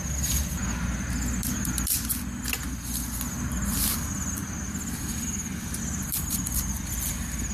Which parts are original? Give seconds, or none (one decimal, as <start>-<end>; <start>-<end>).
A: 0.0-7.5